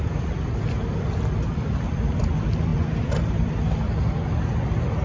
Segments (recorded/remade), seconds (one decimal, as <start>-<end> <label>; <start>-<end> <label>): 0.0-2.7 remade; 2.7-3.3 recorded; 3.3-5.0 remade